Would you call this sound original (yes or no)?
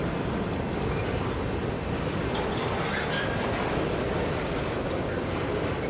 yes